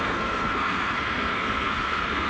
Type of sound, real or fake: fake